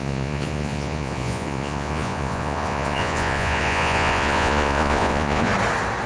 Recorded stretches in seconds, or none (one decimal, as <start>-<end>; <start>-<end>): 5.5-6.1